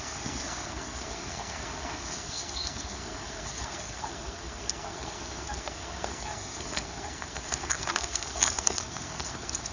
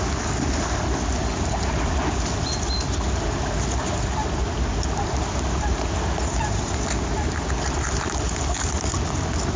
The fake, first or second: first